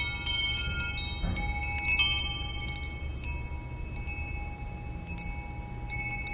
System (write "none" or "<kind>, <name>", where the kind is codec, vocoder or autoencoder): none